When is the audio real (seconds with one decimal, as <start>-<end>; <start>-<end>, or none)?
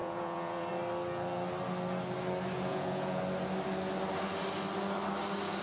0.7-2.7; 3.2-5.6